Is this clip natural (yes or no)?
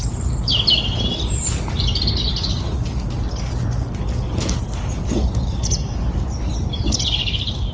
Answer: yes